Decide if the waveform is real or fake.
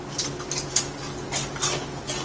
real